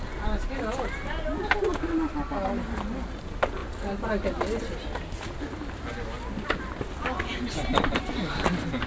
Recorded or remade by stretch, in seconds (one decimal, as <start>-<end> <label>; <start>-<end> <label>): 0.0-8.9 recorded